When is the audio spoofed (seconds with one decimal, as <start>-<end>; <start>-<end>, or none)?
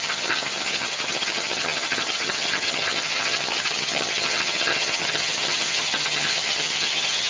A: 0.0-7.3